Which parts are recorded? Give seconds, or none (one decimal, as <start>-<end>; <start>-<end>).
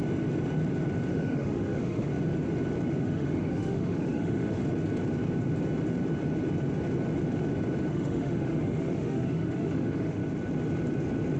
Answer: 0.0-1.1; 2.1-3.0; 4.6-7.9; 10.2-11.4